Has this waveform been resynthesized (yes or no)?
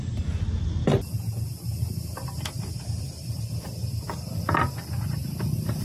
no